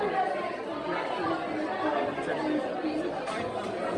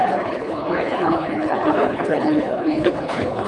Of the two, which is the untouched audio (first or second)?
first